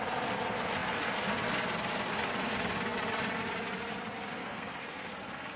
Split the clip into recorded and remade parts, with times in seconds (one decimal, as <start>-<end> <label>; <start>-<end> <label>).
0.0-4.4 recorded; 4.4-5.1 remade; 5.1-5.6 recorded